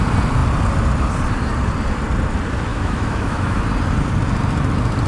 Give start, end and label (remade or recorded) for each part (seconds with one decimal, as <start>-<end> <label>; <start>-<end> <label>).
0.0-2.7 recorded; 2.7-3.6 remade; 3.6-5.1 recorded